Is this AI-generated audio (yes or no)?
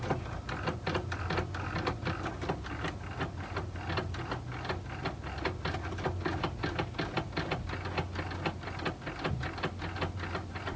no